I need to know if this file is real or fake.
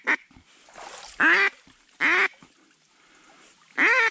real